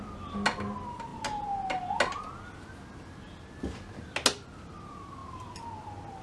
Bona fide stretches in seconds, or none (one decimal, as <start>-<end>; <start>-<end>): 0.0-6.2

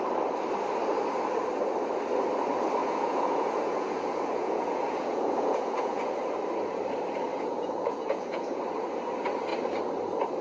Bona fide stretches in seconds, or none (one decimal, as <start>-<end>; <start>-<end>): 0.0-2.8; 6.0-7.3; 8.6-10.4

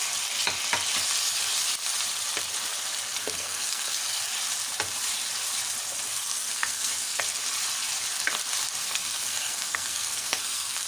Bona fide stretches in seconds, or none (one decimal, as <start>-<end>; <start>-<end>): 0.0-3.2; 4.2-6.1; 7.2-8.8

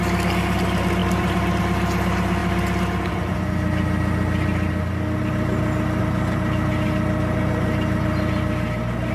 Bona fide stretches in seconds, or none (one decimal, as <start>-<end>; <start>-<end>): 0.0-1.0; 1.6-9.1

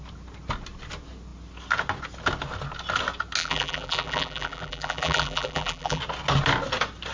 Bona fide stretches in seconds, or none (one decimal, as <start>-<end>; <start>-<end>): 0.0-3.4; 6.0-7.1